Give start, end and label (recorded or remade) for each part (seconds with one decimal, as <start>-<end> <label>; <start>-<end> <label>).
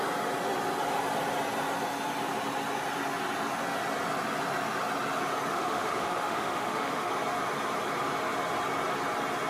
0.0-5.5 recorded; 5.5-7.1 remade; 7.1-9.5 recorded